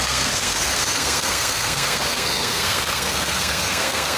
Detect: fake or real fake